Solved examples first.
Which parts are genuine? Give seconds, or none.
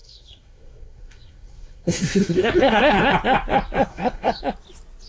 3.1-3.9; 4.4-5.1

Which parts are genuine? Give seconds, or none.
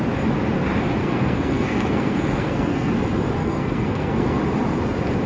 0.0-1.0; 2.9-3.4; 4.4-5.3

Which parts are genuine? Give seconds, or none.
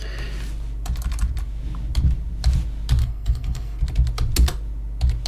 0.0-3.0; 3.8-5.3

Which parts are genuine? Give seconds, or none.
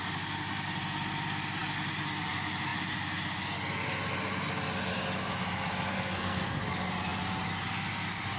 0.0-5.9; 6.6-8.4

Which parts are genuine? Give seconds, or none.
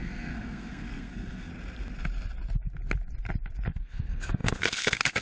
1.5-3.7